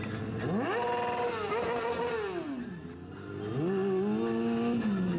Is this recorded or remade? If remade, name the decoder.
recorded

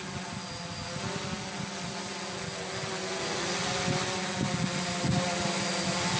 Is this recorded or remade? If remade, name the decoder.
recorded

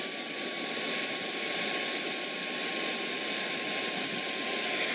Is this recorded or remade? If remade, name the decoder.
recorded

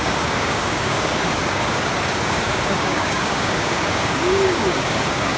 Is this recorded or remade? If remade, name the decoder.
remade, codec, DAC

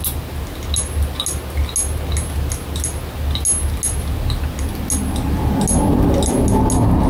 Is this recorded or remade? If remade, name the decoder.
recorded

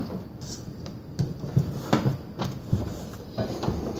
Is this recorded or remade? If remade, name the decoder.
recorded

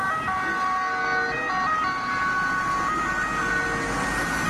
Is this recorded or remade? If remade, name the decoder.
recorded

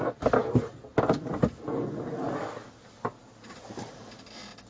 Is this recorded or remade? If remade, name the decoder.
recorded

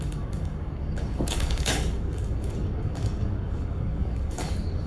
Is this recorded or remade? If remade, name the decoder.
remade, codec, DAC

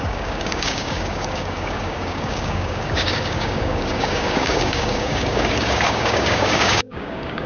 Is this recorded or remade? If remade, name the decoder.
remade, codec, DAC